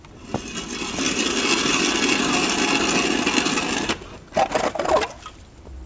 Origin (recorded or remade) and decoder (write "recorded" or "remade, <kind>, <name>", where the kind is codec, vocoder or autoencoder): recorded